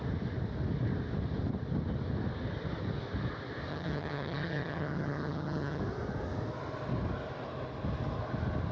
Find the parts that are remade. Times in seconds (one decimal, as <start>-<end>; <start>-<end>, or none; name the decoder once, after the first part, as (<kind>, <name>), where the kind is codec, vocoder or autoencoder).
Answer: 3.7-5.8 (vocoder, HiFi-GAN)